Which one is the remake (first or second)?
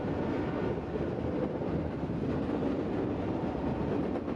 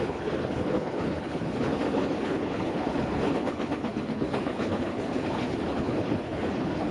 second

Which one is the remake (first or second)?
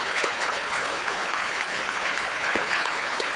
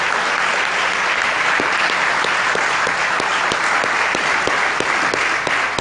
first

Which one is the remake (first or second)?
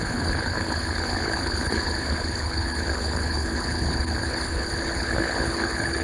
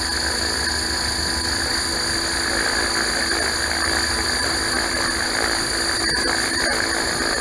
first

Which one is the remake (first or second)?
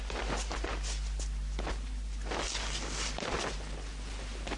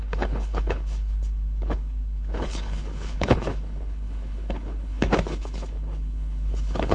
second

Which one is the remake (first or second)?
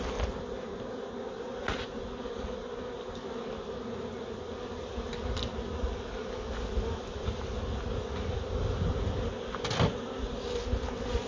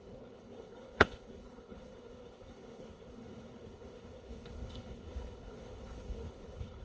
second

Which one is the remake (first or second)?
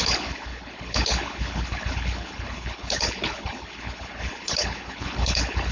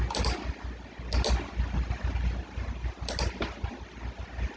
first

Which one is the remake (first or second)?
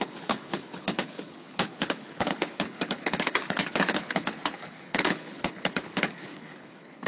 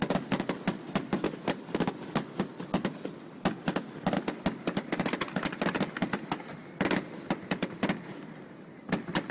first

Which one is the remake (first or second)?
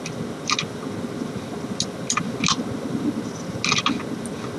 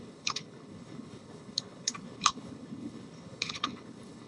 second